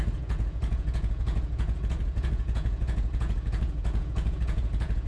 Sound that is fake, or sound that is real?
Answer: fake